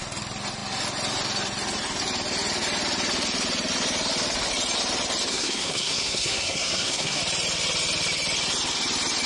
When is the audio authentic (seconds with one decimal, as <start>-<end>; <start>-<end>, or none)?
0.0-5.3; 7.2-9.3